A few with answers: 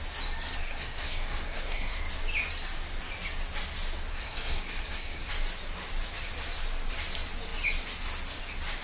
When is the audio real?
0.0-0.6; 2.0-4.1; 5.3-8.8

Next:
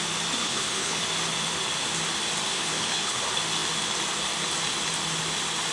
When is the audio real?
0.0-0.4; 1.0-2.5; 3.2-5.7

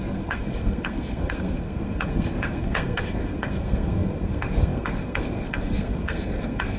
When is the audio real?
none

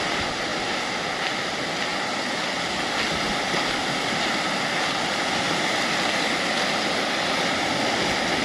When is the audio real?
0.0-8.4

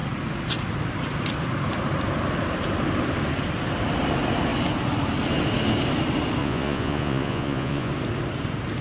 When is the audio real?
0.0-6.4; 7.9-8.8

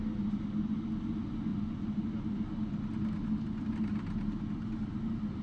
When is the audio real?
0.0-5.4

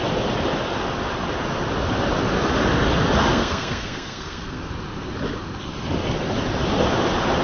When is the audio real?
0.0-3.3; 4.7-7.4